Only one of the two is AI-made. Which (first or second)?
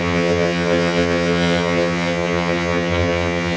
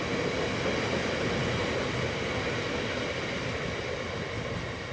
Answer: first